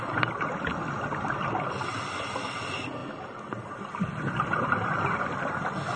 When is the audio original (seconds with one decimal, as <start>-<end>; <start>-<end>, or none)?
0.0-6.0